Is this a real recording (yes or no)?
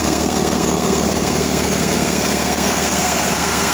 no